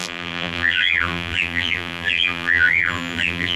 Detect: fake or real fake